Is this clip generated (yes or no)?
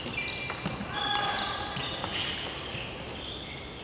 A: no